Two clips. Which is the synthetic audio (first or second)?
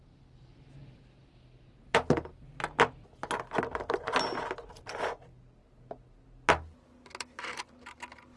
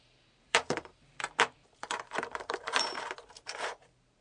second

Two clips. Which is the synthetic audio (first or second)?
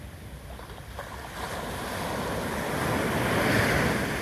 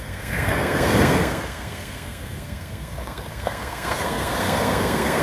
second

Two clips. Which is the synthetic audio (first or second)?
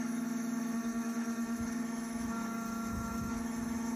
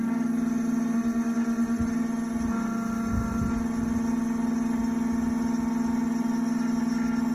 first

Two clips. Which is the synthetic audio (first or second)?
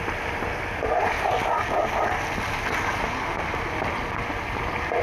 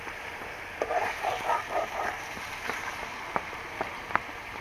second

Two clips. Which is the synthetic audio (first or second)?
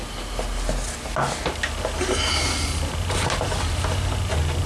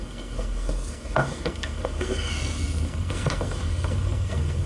second